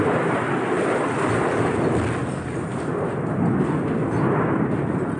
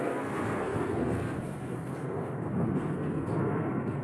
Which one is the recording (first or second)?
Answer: first